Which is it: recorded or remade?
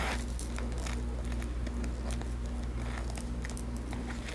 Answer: recorded